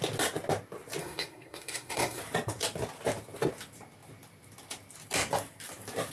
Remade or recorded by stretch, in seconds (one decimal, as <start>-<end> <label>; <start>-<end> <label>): 0.0-1.0 recorded; 1.0-2.2 remade; 2.2-6.1 recorded